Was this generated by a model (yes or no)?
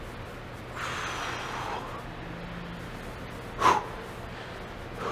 no